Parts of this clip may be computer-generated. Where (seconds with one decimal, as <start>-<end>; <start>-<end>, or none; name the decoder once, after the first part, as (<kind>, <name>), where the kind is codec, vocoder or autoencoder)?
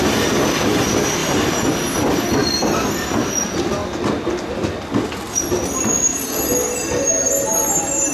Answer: 1.2-1.8 (vocoder, BigVGAN v2)